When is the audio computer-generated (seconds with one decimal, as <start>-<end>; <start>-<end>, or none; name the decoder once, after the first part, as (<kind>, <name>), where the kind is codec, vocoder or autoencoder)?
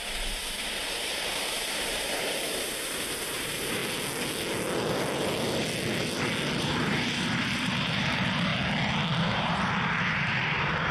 0.0-3.8 (vocoder, BigVGAN v2); 6.6-8.5; 9.2-10.9